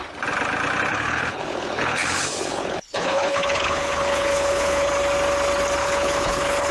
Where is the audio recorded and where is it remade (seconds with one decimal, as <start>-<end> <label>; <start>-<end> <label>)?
0.0-0.9 recorded; 0.9-4.9 remade; 4.9-5.8 recorded; 5.8-6.7 remade